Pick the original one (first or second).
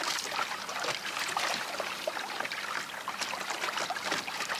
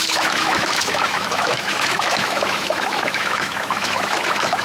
first